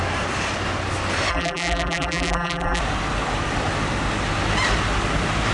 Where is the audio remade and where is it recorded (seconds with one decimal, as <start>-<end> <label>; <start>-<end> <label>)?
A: 0.0-1.3 recorded; 1.3-2.8 remade; 2.8-5.5 recorded